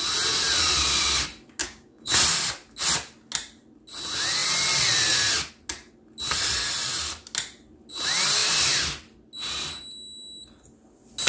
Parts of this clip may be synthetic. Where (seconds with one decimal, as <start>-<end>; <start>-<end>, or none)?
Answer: 1.6-2.1